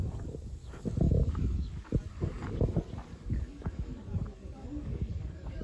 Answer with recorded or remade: remade